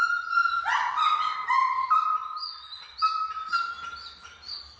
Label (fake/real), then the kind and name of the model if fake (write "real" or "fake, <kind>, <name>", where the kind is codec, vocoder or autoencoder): real